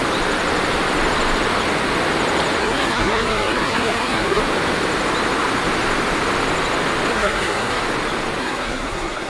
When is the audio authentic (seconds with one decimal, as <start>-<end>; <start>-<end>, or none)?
0.0-2.6; 4.4-7.1; 7.8-8.4

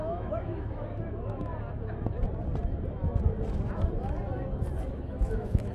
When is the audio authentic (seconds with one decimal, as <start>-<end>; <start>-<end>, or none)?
1.5-4.9

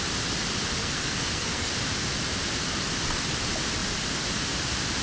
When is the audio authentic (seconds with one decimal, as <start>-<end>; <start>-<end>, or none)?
0.0-0.8; 1.7-5.0

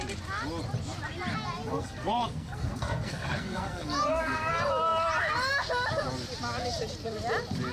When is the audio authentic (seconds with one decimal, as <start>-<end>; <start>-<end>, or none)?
0.0-1.7; 4.5-7.7